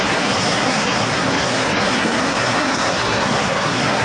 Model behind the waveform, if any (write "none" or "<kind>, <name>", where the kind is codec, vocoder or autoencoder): codec, SNAC